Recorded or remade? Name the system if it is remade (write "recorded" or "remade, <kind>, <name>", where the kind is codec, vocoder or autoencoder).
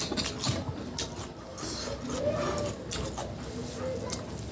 recorded